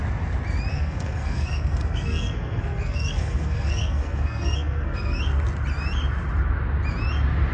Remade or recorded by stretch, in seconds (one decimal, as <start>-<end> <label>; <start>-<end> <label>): 0.0-0.7 recorded; 0.7-5.2 remade; 5.2-7.5 recorded